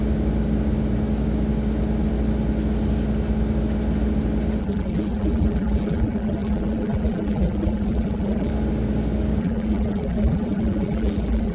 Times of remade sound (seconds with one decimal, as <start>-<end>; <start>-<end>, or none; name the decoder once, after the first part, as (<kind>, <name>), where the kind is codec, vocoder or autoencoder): 4.6-8.5 (vocoder, BigVGAN v2); 9.4-11.5